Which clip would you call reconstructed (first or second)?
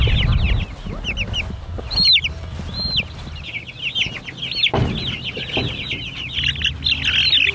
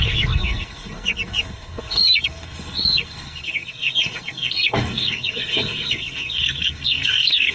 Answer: second